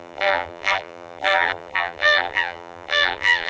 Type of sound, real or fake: fake